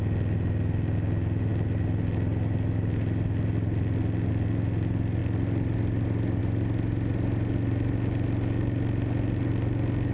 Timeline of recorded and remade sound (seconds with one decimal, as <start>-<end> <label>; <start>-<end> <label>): 0.0-10.1 recorded